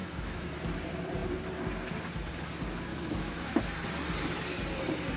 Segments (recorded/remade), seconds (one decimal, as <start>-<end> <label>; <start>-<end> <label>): 0.0-0.6 remade; 0.6-2.9 recorded; 2.9-3.6 remade; 3.6-5.2 recorded